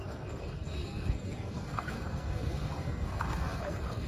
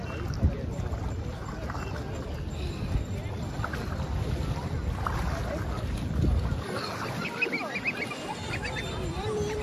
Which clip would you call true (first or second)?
second